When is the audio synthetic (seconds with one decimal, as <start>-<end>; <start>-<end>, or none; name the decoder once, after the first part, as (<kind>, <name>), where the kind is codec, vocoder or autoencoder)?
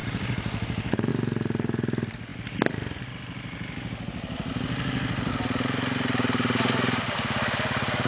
none